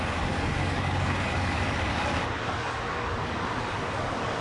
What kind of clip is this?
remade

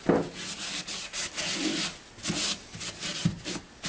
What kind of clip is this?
recorded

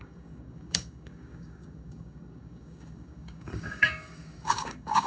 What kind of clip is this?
remade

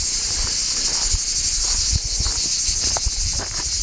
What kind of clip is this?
recorded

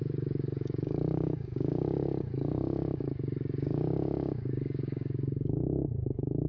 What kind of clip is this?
remade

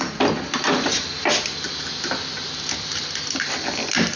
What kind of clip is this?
recorded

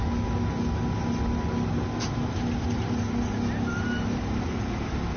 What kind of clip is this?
recorded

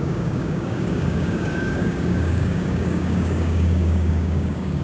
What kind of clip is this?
remade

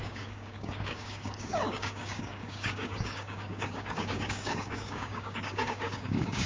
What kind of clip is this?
remade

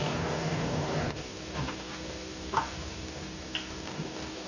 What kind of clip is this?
remade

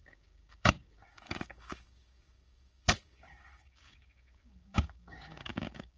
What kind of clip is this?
remade